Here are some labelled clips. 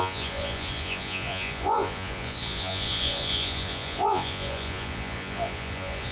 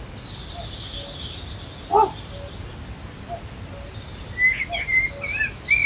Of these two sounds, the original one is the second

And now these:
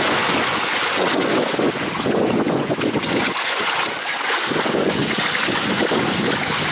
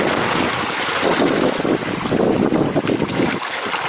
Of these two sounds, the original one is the second